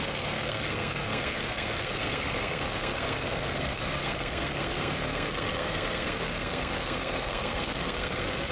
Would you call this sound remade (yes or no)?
yes